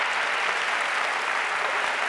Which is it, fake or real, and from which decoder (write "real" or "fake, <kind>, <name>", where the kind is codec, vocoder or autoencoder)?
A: real